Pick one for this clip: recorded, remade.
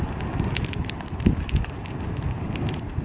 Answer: recorded